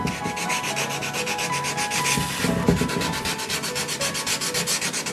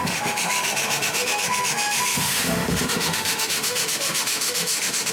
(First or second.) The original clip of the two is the first